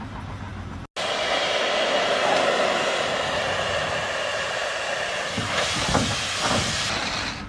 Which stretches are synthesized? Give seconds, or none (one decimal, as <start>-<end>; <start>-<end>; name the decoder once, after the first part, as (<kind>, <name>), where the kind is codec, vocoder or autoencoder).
4.3-4.9 (vocoder, BigVGAN v2); 5.4-5.9